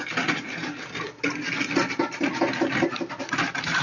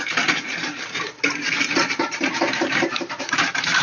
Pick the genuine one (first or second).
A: first